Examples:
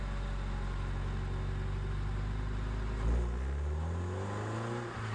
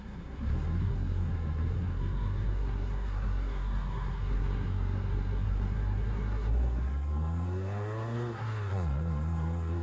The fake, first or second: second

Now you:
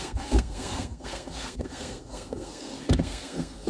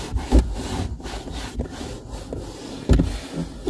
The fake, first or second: first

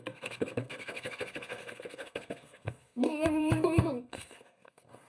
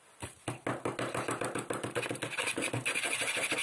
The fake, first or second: first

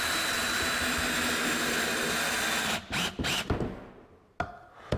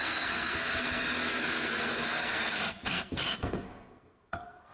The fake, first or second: second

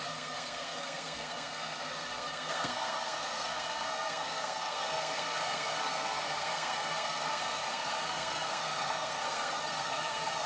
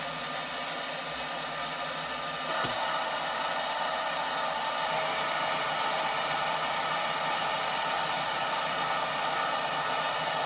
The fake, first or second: first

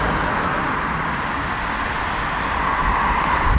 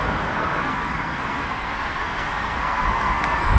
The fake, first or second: second